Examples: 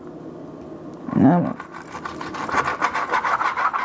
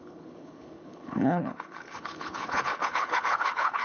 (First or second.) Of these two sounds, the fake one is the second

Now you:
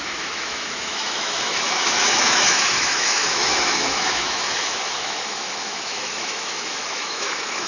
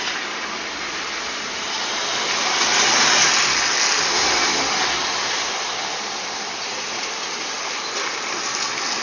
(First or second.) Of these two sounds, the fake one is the first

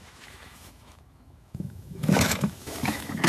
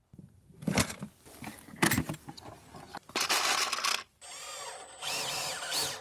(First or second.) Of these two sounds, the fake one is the first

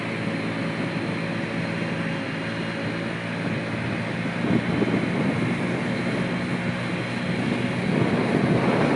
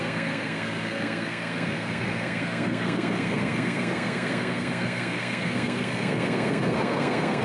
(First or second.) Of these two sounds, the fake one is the second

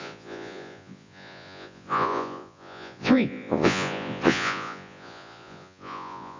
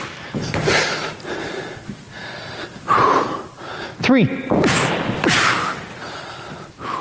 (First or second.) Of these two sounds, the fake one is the first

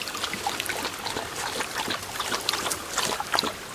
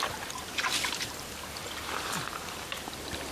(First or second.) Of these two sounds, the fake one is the second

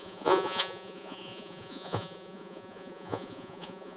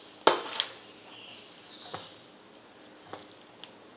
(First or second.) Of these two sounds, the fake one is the first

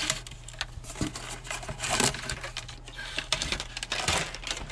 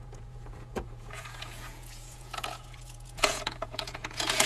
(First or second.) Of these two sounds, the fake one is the second